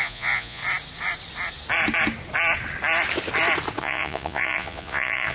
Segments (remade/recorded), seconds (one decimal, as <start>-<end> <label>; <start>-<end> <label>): 0.0-0.6 remade; 0.6-3.8 recorded; 3.8-5.3 remade